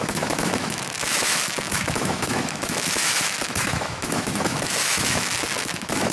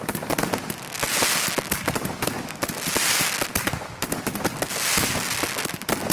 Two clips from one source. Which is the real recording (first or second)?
second